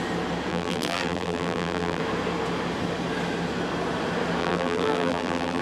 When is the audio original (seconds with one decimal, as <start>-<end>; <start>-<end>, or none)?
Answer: 0.0-0.5; 2.0-4.4